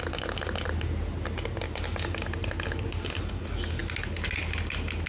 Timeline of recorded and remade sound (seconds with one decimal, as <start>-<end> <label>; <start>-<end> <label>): 0.0-5.1 recorded